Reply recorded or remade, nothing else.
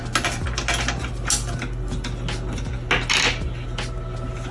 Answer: recorded